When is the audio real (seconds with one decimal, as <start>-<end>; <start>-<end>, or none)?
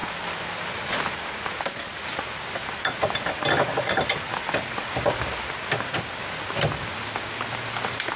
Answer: 0.0-8.2